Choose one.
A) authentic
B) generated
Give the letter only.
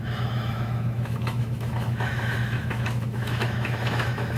B